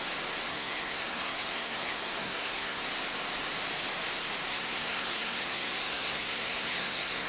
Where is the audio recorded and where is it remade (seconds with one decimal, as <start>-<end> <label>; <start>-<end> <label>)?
0.0-0.5 recorded; 0.5-2.8 remade; 2.8-4.5 recorded; 4.5-7.3 remade